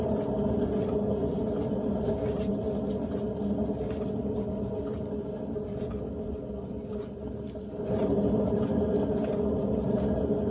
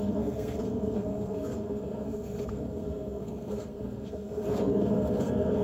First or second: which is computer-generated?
second